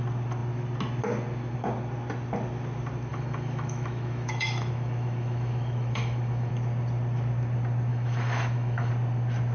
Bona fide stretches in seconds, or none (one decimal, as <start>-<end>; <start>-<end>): 0.0-3.1; 6.5-7.9; 8.9-9.5